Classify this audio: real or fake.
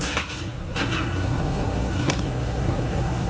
fake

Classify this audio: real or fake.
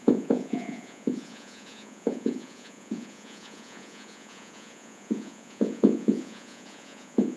fake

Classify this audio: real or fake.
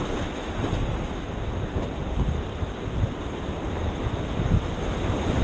real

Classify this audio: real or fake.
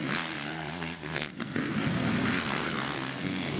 fake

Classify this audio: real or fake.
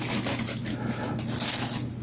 real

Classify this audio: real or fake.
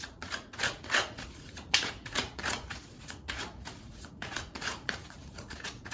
fake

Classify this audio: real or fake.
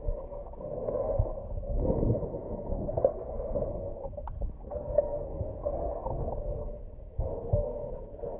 fake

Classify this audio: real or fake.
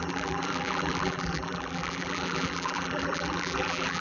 fake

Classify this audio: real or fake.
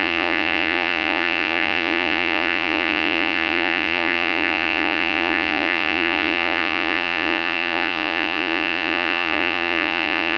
fake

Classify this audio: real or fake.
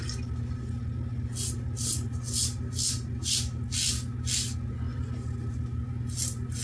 real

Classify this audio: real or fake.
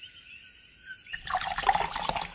real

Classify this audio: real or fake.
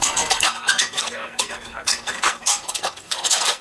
fake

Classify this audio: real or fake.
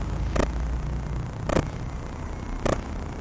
real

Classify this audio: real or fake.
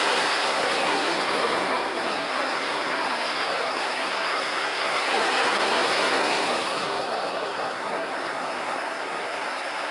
fake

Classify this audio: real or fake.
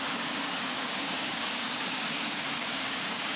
fake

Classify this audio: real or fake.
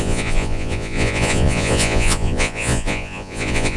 fake